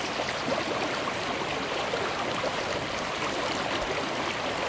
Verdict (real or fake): real